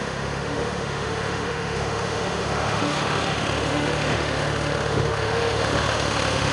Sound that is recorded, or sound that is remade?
remade